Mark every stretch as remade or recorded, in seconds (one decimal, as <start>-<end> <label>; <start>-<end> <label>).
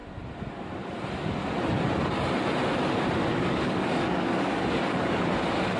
0.0-3.3 recorded; 3.3-5.3 remade; 5.3-5.8 recorded